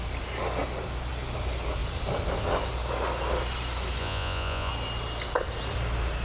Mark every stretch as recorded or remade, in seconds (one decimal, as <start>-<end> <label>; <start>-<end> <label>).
0.0-4.0 recorded; 4.0-4.7 remade; 4.7-6.2 recorded